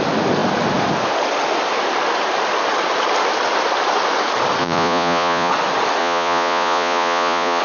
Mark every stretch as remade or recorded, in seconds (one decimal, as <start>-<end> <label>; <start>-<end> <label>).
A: 0.0-4.6 recorded; 4.6-5.5 remade; 5.5-6.0 recorded; 6.0-7.6 remade